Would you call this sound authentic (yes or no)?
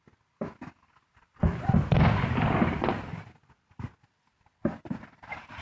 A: yes